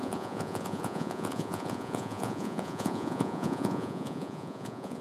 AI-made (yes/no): yes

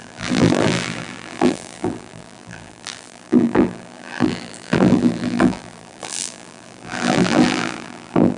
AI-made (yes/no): yes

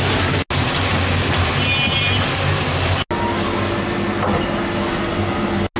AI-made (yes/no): no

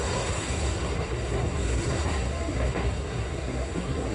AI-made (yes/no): yes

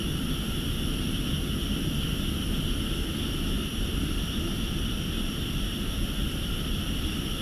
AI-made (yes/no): no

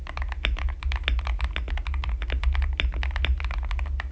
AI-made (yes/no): no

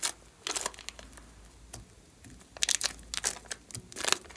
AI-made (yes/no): no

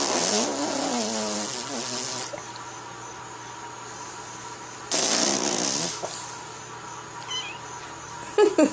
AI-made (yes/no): no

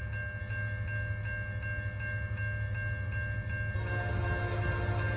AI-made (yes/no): no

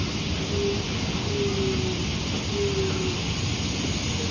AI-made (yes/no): no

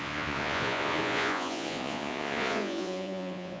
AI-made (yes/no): yes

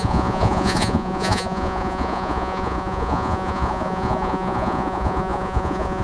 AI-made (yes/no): yes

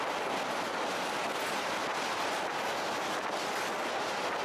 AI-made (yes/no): no